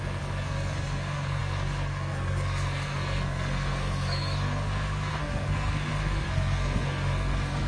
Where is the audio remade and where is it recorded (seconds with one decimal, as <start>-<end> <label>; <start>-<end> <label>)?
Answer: 0.0-7.7 remade